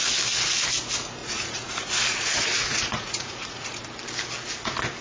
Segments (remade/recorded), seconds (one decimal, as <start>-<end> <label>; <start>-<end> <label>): 0.0-1.2 recorded; 1.2-3.8 remade; 3.8-5.0 recorded